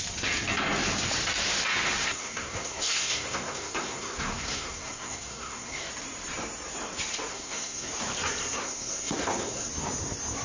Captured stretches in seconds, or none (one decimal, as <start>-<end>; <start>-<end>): 0.0-2.0; 5.9-7.3; 7.9-8.6; 9.7-10.4